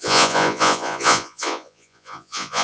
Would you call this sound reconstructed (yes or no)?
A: yes